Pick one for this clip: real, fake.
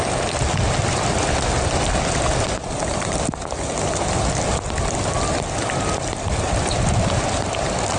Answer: real